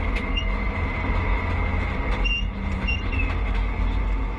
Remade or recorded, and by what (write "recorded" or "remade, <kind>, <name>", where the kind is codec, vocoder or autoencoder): recorded